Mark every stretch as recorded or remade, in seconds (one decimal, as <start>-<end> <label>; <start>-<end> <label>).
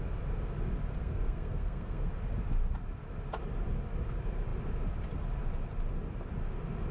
0.0-1.0 recorded; 1.0-2.1 remade; 2.1-6.9 recorded